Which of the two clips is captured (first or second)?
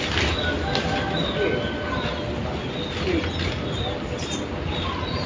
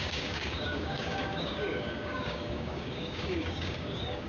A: first